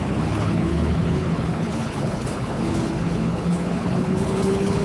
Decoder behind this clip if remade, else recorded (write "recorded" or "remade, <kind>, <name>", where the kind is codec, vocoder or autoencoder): remade, codec, HILCodec